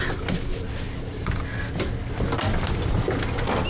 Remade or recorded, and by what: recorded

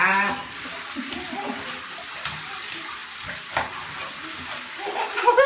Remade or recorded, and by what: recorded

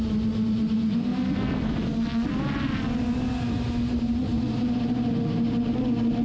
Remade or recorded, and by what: recorded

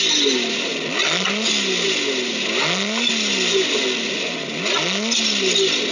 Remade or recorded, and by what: recorded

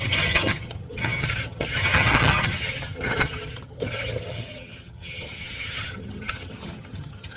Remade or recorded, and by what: remade, vocoder, HiFi-GAN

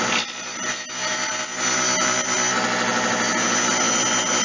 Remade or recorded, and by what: recorded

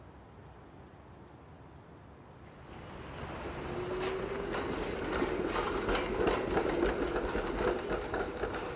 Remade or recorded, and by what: recorded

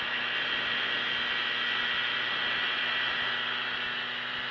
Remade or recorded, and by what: recorded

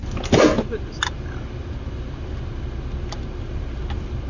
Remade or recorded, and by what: recorded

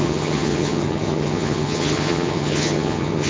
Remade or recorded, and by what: remade, vocoder, HiFi-GAN